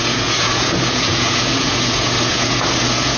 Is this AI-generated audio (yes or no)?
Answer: yes